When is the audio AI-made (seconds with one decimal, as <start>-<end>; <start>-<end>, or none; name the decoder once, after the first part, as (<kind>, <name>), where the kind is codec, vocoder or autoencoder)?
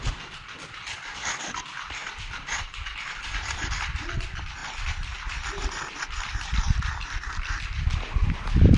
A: 0.0-8.8 (vocoder, BigVGAN v2)